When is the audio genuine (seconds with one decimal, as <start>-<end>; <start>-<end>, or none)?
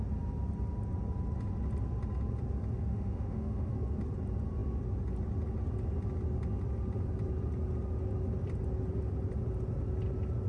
0.0-2.9; 3.7-10.5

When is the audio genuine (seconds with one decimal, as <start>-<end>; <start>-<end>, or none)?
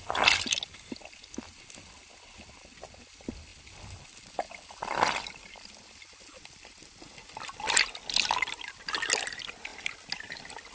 0.0-10.7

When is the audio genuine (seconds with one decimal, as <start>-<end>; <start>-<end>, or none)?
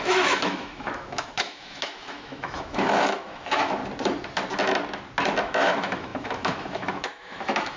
3.8-5.4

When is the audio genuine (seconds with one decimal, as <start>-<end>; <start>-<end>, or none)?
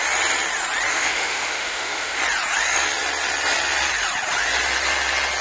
0.0-0.9; 2.2-5.4